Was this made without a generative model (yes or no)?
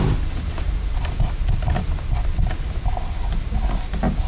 yes